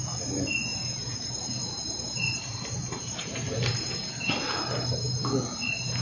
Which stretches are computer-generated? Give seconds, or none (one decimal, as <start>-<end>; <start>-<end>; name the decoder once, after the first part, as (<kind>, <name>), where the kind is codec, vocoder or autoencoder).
0.7-4.3 (vocoder, BigVGAN v2)